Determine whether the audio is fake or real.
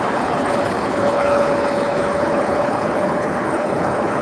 fake